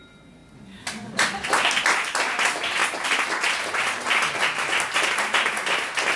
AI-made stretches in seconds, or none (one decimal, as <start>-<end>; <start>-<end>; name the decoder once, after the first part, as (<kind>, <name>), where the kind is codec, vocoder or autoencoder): 0.0-0.4 (vocoder, BigVGAN v2); 2.0-2.8